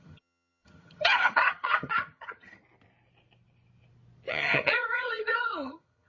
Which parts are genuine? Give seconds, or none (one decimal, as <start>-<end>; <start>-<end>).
2.6-4.3